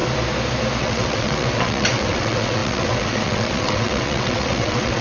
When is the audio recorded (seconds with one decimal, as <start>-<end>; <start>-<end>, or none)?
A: 0.0-0.8